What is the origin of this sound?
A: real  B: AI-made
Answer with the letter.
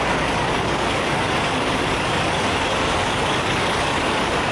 B